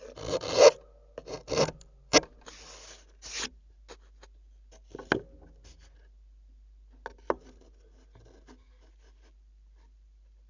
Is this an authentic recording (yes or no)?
yes